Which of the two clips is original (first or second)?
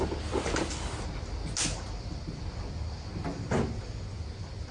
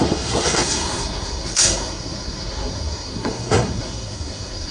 first